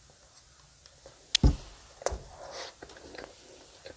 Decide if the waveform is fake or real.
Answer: real